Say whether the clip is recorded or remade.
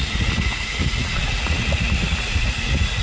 remade